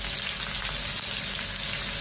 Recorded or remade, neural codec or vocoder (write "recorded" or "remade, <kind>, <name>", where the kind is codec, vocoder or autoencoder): recorded